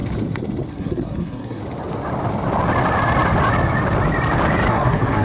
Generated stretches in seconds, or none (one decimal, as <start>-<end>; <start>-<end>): 0.7-1.6; 4.7-5.2